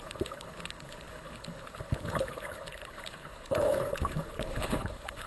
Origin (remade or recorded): remade